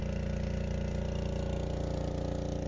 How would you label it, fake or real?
real